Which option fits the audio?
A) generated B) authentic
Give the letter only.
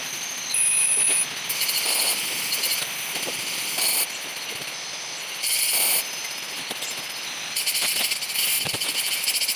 B